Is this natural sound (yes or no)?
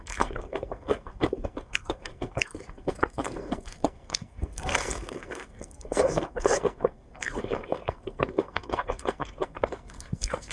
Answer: no